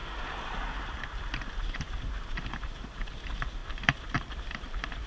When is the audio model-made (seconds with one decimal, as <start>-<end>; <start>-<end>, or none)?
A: 0.0-3.1; 3.6-5.1